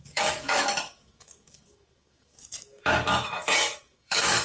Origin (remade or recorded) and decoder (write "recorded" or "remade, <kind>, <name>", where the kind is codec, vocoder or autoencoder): remade, autoencoder, DAC-VAE